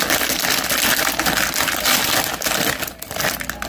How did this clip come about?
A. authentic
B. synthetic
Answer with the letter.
A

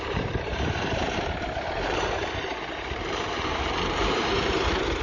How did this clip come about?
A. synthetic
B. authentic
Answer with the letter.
A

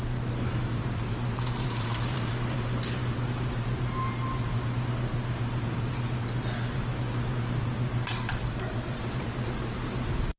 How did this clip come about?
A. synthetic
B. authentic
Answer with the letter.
A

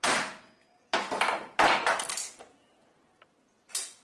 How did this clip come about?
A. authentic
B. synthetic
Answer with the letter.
B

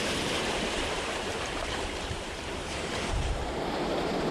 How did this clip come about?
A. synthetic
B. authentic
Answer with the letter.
A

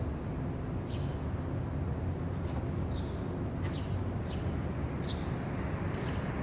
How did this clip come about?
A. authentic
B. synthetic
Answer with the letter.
A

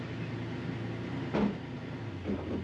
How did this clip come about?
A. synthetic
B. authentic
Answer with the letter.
B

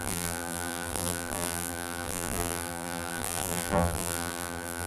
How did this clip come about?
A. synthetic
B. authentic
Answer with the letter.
A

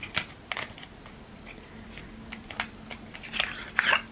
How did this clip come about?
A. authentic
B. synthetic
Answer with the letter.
A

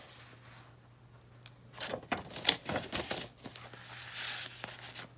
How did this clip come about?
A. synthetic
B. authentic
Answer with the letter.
B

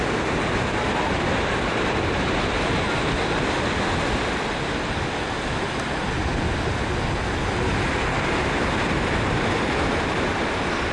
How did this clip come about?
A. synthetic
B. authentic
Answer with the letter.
B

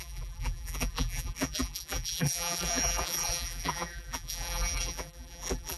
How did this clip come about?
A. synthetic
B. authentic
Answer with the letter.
A